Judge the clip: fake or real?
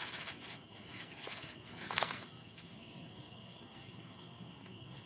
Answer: fake